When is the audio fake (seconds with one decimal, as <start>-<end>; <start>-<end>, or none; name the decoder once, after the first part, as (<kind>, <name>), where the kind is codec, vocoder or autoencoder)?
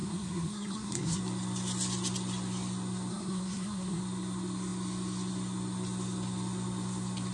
0.0-1.2 (codec, SNAC); 3.1-4.0